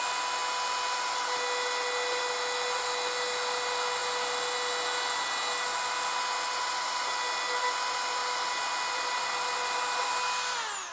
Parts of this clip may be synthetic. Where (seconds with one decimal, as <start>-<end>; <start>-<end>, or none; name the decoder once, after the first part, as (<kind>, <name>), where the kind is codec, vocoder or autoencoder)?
none